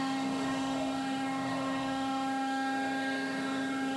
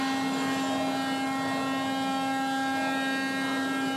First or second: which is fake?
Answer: first